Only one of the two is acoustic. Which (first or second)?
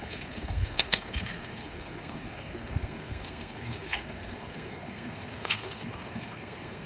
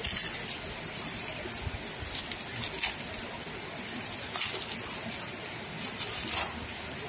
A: second